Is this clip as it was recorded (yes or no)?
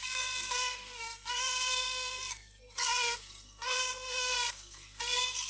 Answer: no